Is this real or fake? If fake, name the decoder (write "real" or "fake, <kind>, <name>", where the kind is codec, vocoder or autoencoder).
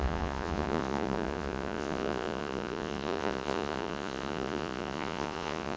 fake, vocoder, Vocos